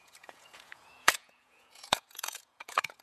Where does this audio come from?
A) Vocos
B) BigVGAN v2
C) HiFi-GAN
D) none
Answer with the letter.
A